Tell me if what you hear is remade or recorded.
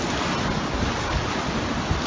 recorded